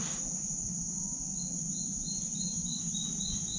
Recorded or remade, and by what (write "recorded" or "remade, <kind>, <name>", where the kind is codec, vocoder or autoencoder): recorded